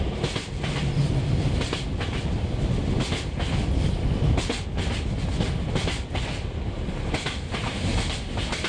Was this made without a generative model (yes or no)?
yes